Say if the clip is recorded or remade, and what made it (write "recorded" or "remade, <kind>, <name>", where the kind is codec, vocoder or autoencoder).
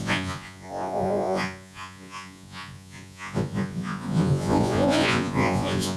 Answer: remade, vocoder, Vocos